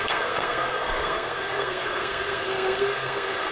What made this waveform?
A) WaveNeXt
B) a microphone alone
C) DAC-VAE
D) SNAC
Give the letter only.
D